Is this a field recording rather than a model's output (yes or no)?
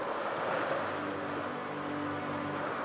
yes